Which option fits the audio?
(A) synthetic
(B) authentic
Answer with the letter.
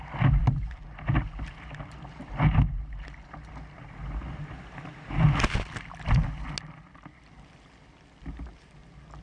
B